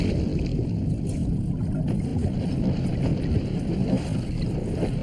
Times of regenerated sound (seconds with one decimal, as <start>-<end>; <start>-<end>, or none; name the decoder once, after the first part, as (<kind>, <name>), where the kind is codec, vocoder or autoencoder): none